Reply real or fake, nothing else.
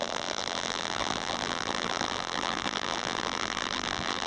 fake